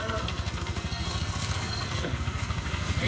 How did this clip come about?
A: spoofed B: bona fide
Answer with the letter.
A